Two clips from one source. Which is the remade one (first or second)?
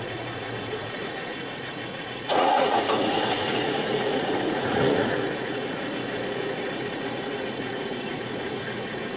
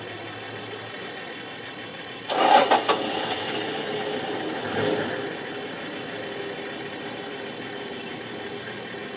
first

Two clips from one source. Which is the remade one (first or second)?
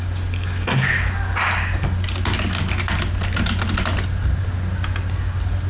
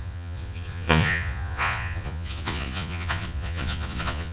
second